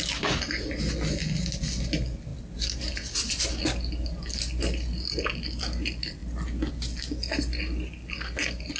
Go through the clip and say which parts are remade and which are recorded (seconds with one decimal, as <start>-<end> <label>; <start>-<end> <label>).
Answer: 0.0-8.8 recorded

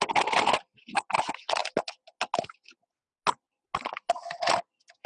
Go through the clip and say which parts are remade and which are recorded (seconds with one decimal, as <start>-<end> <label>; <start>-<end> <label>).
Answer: 0.0-5.1 recorded

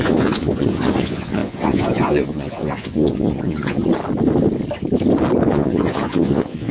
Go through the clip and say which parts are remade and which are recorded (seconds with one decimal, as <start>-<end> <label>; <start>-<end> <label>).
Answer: 0.0-3.8 remade; 3.8-5.5 recorded; 5.5-6.7 remade

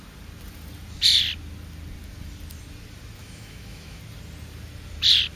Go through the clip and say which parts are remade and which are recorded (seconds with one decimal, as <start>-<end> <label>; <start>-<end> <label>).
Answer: 0.0-3.2 recorded; 3.2-4.0 remade; 4.0-5.4 recorded

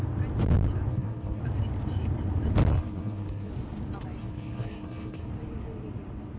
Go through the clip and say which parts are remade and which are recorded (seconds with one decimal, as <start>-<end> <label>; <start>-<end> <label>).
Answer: 0.0-0.9 recorded; 0.9-1.4 remade; 1.4-2.7 recorded; 2.7-3.5 remade; 3.5-4.2 recorded; 4.2-5.3 remade; 5.3-6.4 recorded

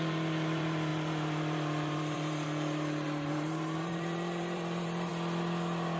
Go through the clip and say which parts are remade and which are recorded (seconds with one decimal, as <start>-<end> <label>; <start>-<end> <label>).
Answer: 0.0-5.1 remade; 5.1-6.0 recorded

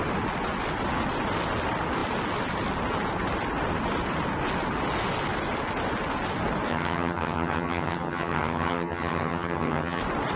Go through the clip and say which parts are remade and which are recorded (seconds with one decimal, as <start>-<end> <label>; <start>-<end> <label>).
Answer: 0.0-6.7 recorded; 6.7-10.0 remade; 10.0-10.4 recorded